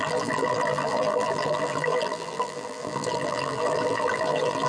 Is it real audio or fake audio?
fake